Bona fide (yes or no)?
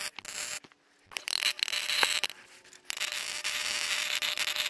yes